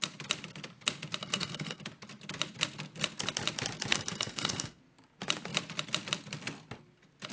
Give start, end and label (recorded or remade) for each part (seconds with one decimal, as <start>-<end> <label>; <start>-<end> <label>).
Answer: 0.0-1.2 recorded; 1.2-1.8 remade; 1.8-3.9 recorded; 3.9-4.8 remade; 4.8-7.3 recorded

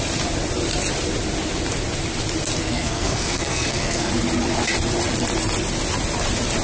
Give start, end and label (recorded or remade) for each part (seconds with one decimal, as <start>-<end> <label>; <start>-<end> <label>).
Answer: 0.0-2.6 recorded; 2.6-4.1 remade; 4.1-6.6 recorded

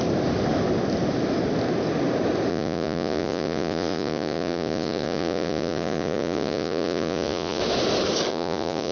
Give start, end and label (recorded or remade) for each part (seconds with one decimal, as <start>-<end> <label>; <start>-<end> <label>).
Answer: 0.0-2.5 recorded; 2.5-7.6 remade; 7.6-8.3 recorded; 8.3-8.9 remade

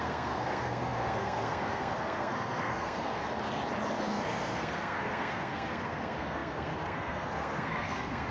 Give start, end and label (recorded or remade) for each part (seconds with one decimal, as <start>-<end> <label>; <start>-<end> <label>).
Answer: 0.0-3.2 remade; 3.2-4.0 recorded; 4.0-8.3 remade

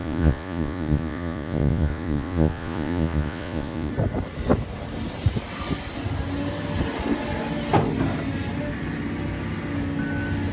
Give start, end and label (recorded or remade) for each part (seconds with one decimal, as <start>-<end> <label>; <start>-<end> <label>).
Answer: 0.0-3.9 remade; 3.9-10.5 recorded

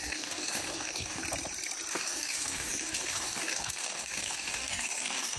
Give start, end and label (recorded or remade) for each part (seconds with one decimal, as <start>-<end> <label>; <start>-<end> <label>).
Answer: 0.0-1.2 remade; 1.2-1.9 recorded; 1.9-5.4 remade

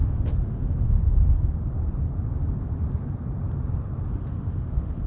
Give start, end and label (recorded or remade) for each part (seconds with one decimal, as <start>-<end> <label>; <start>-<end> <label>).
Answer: 0.0-1.0 remade; 1.0-4.1 recorded; 4.1-5.1 remade

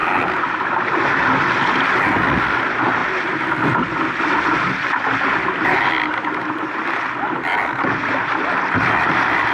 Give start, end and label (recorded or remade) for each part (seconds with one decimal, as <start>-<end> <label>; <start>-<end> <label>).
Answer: 0.0-2.4 recorded; 2.4-7.5 remade; 7.5-8.1 recorded; 8.1-9.5 remade